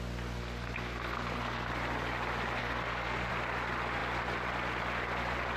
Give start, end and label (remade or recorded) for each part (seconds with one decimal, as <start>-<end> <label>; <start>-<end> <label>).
0.0-0.4 recorded; 0.4-1.7 remade; 1.7-2.6 recorded; 2.6-3.3 remade; 3.3-5.6 recorded